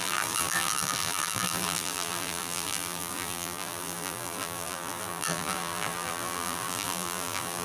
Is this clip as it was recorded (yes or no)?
no